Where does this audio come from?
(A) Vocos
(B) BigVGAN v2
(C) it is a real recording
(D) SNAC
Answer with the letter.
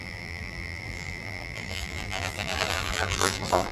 B